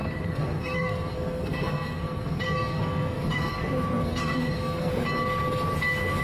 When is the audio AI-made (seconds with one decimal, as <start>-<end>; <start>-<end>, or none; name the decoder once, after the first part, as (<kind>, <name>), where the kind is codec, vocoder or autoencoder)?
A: 0.0-3.5 (codec, SNAC); 4.0-4.9